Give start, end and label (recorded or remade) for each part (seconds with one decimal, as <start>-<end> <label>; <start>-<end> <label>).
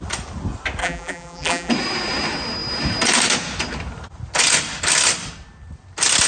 0.0-0.8 recorded; 0.8-1.7 remade; 1.7-6.3 recorded